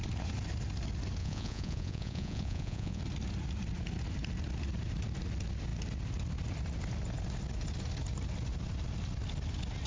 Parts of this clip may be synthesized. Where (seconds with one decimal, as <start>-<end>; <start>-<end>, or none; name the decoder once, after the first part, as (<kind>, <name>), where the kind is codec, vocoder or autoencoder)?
1.2-3.0 (vocoder, Vocos)